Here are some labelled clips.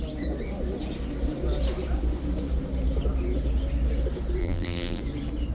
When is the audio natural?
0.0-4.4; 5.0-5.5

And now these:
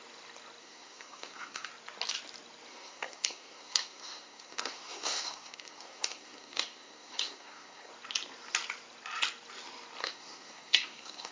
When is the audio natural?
0.0-0.6; 1.7-2.7; 7.9-10.0

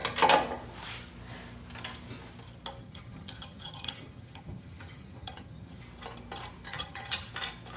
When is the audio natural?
0.0-2.8; 5.8-6.7; 7.3-7.8

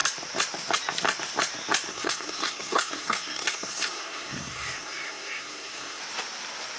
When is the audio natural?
0.0-1.9; 6.0-6.8

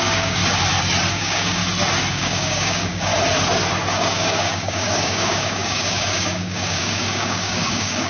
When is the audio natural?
0.4-1.1; 1.6-2.1; 3.1-3.9

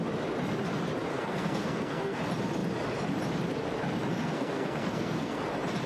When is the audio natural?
0.0-1.1; 2.2-4.1; 5.4-5.9

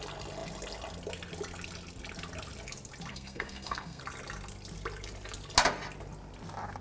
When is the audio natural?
0.0-3.1; 4.0-6.8

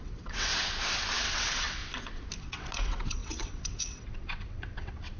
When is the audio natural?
0.5-1.2; 1.8-2.4